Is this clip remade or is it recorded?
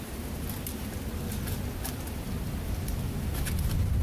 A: recorded